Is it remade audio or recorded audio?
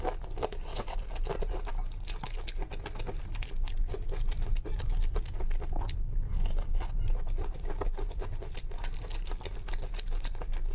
recorded